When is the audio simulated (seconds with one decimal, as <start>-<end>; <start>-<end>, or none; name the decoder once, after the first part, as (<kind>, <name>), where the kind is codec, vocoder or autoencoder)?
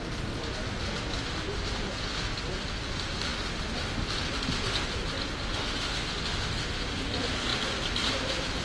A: 5.5-6.0 (autoencoder, DAC-VAE)